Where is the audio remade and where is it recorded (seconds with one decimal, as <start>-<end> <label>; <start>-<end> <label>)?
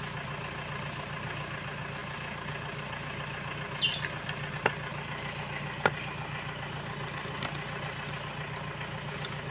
0.0-9.5 recorded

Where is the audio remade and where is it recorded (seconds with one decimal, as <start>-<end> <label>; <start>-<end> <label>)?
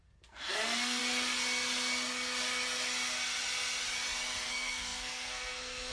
0.0-1.0 remade; 1.0-4.5 recorded; 4.5-5.9 remade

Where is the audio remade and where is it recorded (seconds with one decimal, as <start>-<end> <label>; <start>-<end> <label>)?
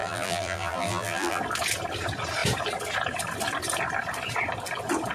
0.0-1.4 remade; 1.4-5.1 recorded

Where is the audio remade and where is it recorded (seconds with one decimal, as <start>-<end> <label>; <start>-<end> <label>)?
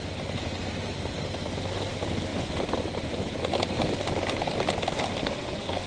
0.0-5.2 recorded; 5.2-5.9 remade